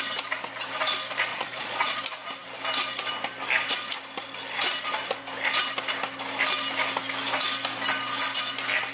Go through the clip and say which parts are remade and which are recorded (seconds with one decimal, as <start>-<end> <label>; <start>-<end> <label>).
0.0-1.3 recorded; 1.3-2.0 remade; 2.0-8.9 recorded